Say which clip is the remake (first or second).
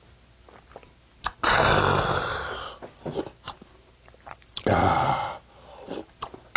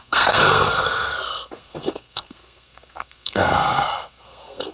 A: second